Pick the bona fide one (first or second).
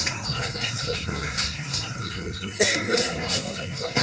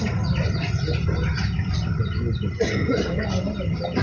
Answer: second